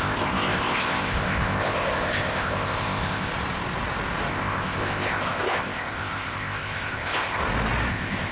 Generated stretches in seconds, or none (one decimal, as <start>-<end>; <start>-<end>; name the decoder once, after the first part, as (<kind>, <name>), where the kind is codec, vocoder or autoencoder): 0.0-3.3 (codec, ZipCodec); 4.3-7.4; 7.9-8.3